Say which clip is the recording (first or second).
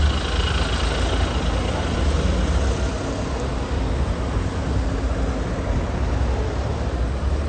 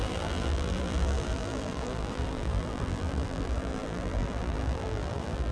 first